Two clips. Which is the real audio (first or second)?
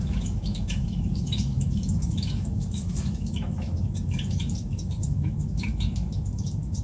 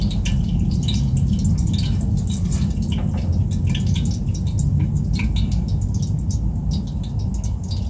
second